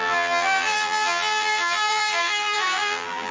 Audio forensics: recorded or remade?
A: remade